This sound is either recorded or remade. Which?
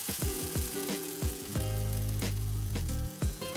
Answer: remade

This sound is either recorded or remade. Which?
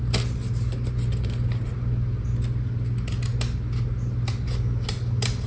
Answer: recorded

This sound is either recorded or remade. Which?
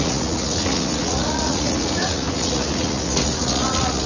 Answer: remade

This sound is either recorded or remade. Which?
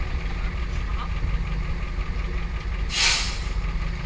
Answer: recorded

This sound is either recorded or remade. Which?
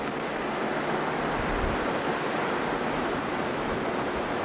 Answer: recorded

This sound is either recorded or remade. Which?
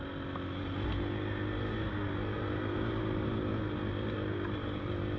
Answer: recorded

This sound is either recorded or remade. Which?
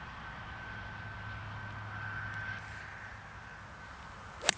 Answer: recorded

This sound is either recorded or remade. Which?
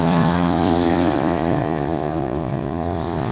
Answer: remade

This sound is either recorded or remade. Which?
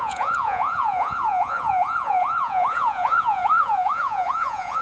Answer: remade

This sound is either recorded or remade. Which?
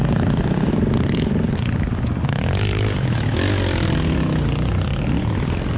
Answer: recorded